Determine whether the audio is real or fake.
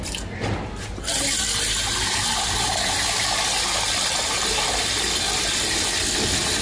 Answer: real